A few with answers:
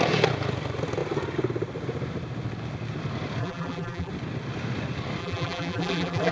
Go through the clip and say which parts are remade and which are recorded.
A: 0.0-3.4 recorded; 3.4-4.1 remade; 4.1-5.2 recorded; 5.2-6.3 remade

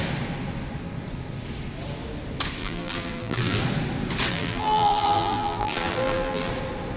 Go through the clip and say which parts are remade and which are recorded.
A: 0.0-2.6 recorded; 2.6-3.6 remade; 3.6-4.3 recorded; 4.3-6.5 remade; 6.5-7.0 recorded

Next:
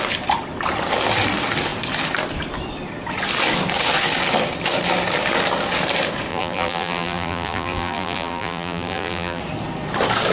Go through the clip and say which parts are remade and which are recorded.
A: 0.0-6.3 recorded; 6.3-9.4 remade; 9.4-10.3 recorded

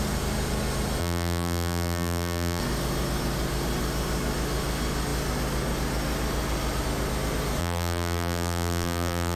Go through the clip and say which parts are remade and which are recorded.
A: 0.0-1.0 recorded; 1.0-2.6 remade; 2.6-7.6 recorded; 7.6-9.4 remade

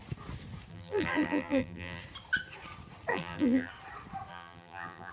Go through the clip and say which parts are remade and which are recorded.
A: 0.0-0.7 recorded; 0.7-2.0 remade; 2.0-3.1 recorded; 3.1-3.7 remade; 3.7-4.3 recorded; 4.3-5.1 remade

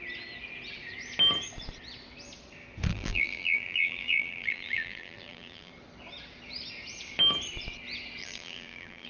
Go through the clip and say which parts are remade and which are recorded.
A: 0.0-2.9 recorded; 2.9-5.7 remade; 5.7-8.2 recorded; 8.2-9.1 remade